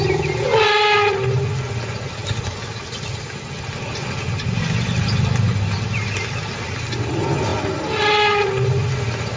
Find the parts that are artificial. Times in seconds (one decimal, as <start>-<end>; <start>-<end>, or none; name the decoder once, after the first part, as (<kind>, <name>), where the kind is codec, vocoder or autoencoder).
none